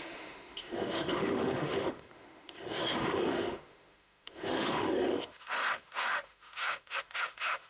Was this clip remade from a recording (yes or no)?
yes